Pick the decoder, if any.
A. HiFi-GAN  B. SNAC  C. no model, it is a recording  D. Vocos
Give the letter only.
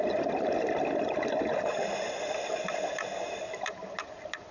C